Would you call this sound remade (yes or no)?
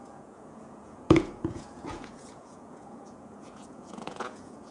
yes